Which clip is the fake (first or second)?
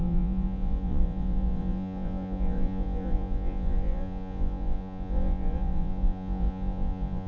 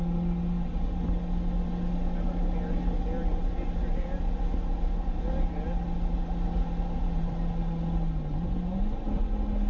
first